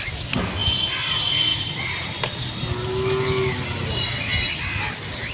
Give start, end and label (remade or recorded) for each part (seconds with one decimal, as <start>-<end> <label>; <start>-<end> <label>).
0.0-0.6 recorded; 0.6-1.1 remade; 1.1-1.5 recorded; 1.5-2.6 remade; 2.6-5.3 recorded